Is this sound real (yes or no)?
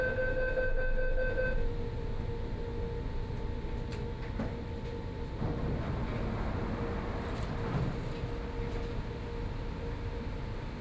yes